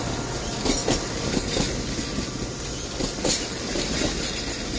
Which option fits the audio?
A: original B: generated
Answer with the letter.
A